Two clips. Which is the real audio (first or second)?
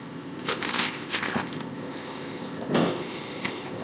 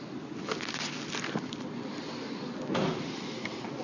second